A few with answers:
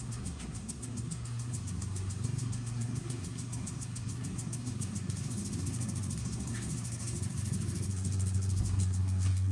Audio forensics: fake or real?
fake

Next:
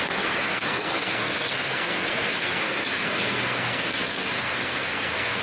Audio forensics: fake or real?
fake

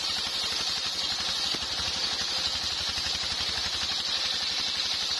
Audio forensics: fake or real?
real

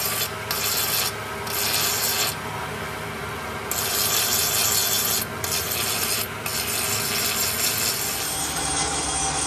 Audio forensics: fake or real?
real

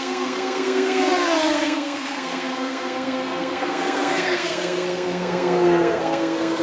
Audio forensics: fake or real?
fake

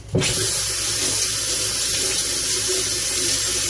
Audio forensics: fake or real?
real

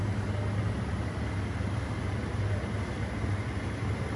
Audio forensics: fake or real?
real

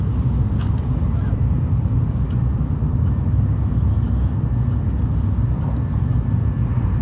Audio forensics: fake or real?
real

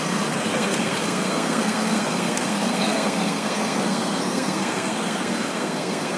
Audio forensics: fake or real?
fake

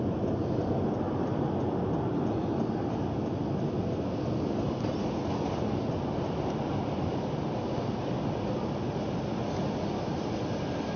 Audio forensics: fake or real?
real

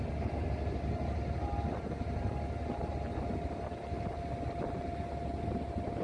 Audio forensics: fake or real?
real